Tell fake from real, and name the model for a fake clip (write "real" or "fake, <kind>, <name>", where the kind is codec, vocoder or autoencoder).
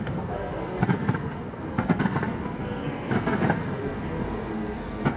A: fake, codec, SNAC